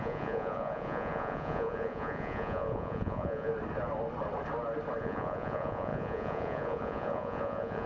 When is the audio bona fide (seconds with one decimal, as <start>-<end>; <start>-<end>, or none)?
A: 3.5-5.0